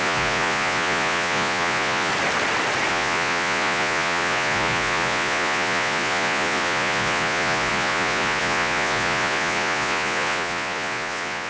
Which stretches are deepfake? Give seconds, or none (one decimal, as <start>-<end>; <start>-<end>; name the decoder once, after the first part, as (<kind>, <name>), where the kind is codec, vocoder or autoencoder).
0.0-2.1 (vocoder, Vocos); 2.9-11.5